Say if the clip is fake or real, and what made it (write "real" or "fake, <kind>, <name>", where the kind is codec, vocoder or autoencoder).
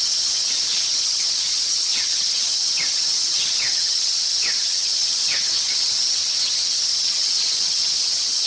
fake, vocoder, HiFi-GAN